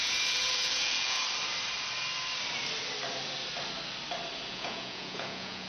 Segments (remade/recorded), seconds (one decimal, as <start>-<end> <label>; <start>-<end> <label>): 0.0-1.2 remade; 1.2-4.5 recorded; 4.5-5.7 remade